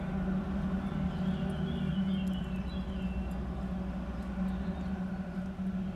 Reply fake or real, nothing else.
real